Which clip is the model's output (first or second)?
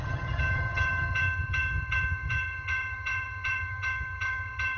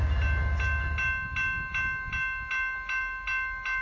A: first